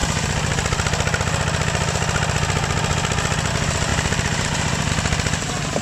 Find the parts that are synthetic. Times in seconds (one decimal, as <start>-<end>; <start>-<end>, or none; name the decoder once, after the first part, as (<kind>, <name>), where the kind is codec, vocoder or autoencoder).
3.9-4.9 (vocoder, BigVGAN v2)